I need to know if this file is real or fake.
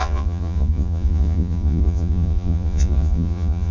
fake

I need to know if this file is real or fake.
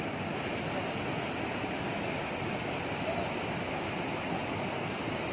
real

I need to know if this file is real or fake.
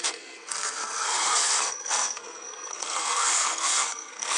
fake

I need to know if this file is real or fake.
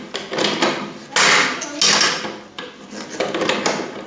real